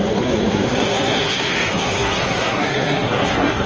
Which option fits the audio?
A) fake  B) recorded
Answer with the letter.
A